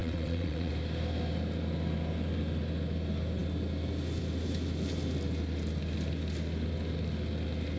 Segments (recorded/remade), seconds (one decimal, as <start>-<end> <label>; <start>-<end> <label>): 0.0-0.7 remade; 0.7-7.8 recorded